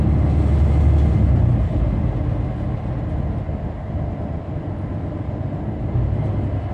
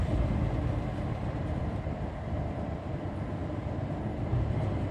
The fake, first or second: second